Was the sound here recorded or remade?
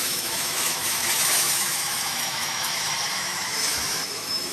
remade